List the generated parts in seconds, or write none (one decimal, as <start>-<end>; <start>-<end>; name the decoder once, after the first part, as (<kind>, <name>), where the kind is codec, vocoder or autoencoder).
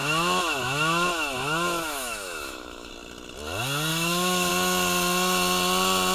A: 0.0-2.9 (autoencoder, DAC-VAE); 3.9-4.5